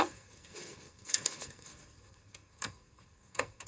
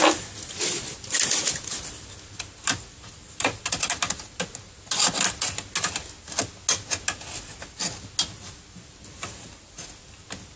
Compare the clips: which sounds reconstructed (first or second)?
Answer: first